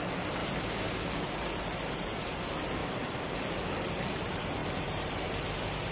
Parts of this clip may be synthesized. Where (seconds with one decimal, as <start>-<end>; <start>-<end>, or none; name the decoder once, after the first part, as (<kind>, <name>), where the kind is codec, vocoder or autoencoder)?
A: 0.0-5.9 (vocoder, BigVGAN v2)